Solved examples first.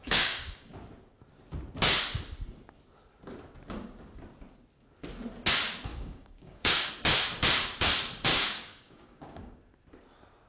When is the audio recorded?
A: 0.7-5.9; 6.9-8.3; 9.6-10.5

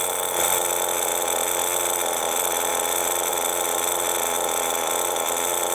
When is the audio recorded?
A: 0.0-5.7

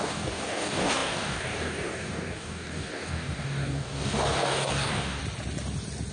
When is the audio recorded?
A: 5.2-6.1

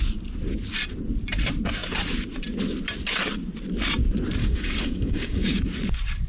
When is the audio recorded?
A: 0.0-4.4; 5.6-6.3

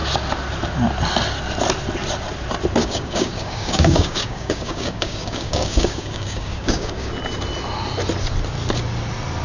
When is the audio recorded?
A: 0.0-2.8; 7.1-9.4

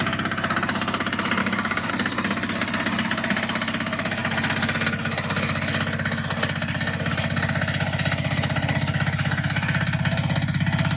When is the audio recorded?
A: 0.0-1.4; 1.9-11.0

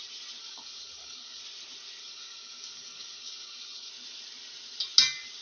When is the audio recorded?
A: 0.0-0.4; 1.4-2.0; 3.9-5.4

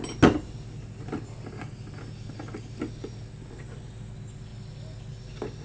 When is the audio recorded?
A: 0.0-5.6